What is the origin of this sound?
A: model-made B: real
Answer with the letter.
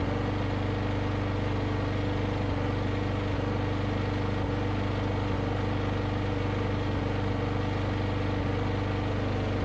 B